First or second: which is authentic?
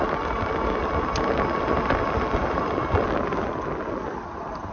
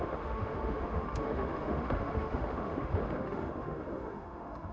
first